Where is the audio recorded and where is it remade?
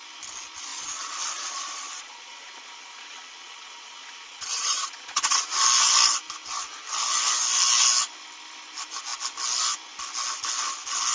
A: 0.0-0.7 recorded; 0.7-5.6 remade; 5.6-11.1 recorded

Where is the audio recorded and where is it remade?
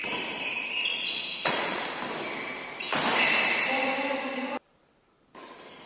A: 0.0-0.9 recorded; 0.9-2.0 remade; 2.0-5.9 recorded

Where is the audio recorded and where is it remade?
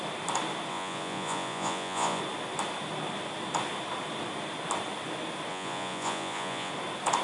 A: 0.0-0.7 recorded; 0.7-2.2 remade; 2.2-5.5 recorded; 5.5-6.7 remade; 6.7-7.2 recorded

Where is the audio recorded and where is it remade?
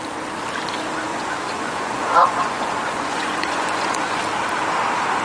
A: 0.0-1.1 recorded; 1.1-4.2 remade; 4.2-5.2 recorded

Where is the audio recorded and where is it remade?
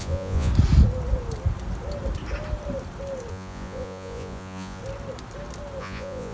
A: 0.0-0.5 remade; 0.5-3.3 recorded; 3.3-4.8 remade; 4.8-5.8 recorded; 5.8-6.3 remade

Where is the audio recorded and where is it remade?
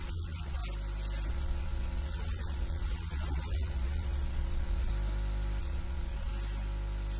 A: 0.0-0.6 remade; 0.6-1.3 recorded; 1.3-4.9 remade; 4.9-5.6 recorded; 5.6-6.3 remade; 6.3-7.2 recorded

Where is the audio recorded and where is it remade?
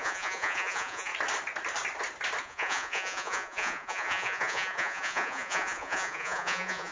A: 0.0-1.1 remade; 1.1-2.4 recorded; 2.4-6.9 remade